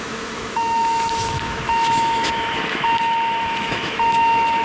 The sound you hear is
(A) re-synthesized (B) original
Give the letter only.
A